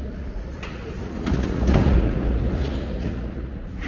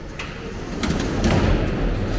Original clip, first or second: second